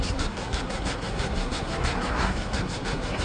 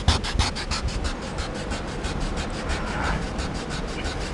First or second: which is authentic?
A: second